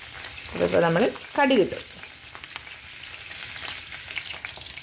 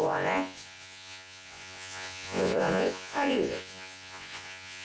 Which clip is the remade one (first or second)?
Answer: second